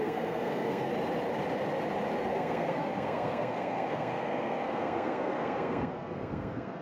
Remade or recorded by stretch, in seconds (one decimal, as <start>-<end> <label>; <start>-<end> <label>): 0.0-0.9 remade; 0.9-2.3 recorded; 2.3-6.8 remade